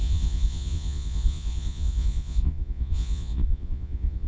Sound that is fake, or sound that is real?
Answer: fake